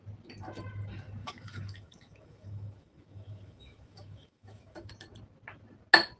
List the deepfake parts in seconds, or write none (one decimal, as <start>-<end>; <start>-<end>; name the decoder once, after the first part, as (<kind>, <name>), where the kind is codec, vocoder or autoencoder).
1.2-4.9 (autoencoder, DAC-VAE)